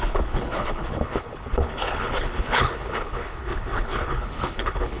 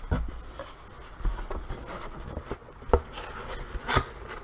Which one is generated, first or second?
first